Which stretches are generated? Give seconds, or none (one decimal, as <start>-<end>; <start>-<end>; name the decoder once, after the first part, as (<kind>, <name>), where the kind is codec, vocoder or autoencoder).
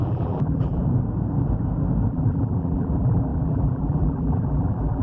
0.0-0.8 (vocoder, BigVGAN v2); 2.1-5.0